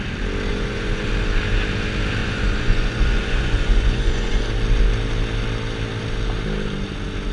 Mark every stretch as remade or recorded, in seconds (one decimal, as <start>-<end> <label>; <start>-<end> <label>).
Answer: 0.0-0.5 recorded; 0.5-1.1 remade; 1.1-2.2 recorded; 2.2-4.4 remade; 4.4-7.3 recorded

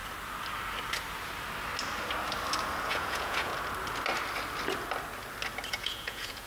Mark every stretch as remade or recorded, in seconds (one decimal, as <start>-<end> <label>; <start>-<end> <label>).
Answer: 0.0-2.9 recorded; 2.9-3.5 remade; 3.5-5.7 recorded; 5.7-6.5 remade